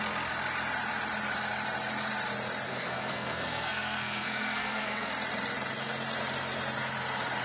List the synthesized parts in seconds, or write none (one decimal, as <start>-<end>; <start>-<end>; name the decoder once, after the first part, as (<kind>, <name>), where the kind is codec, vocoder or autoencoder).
2.7-5.1 (codec, SNAC)